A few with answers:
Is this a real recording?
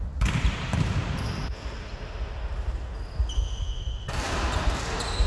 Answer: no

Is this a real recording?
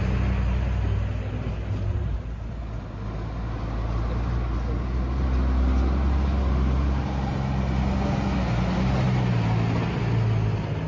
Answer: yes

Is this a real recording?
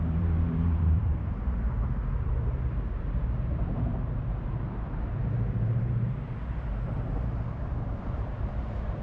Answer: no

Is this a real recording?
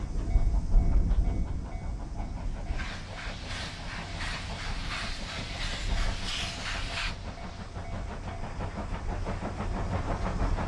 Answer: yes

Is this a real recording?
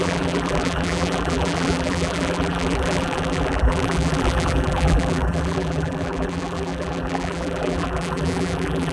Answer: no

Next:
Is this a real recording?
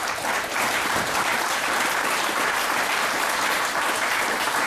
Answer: no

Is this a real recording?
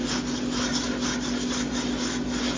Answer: yes